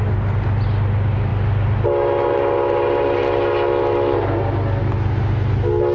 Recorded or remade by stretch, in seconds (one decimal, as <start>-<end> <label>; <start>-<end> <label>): 0.0-5.9 recorded